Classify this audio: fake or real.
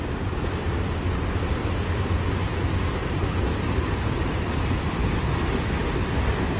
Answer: real